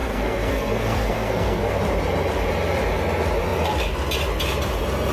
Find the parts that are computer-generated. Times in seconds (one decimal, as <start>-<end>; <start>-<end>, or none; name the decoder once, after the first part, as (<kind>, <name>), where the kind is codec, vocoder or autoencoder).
0.0-1.8 (codec, SNAC)